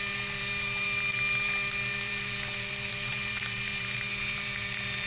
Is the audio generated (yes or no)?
yes